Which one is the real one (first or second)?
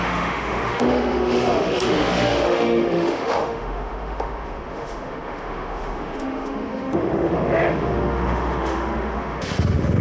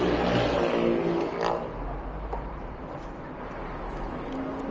second